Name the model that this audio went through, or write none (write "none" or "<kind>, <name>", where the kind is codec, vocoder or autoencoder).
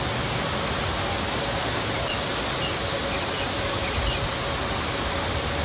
none